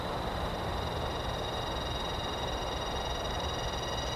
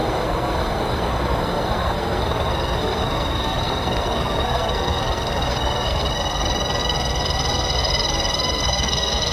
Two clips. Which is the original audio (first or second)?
first